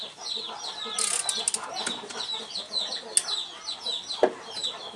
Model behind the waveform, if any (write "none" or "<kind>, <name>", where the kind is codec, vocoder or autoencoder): none